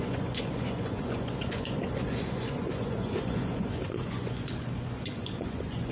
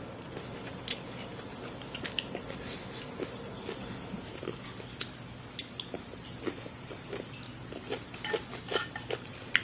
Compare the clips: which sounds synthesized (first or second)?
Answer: first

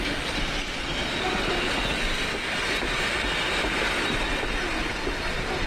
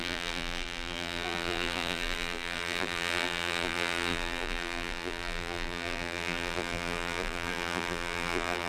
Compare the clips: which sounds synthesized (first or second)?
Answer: second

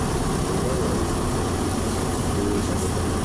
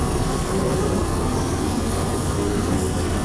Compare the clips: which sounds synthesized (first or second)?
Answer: second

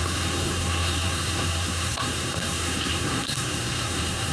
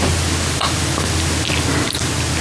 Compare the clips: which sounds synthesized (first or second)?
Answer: first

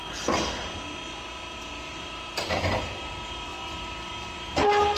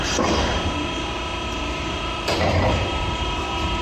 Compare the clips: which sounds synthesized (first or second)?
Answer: second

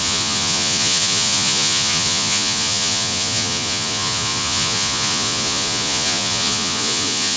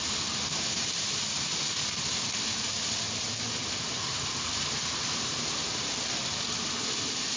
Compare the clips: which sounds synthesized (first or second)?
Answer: first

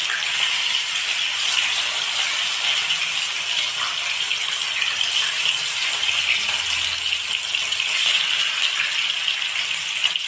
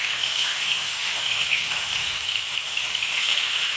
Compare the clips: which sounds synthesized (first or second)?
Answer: second